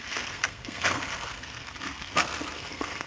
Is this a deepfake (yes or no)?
yes